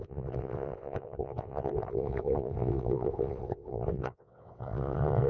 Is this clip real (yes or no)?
no